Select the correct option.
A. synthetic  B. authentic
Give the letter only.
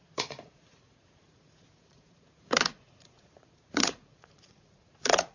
A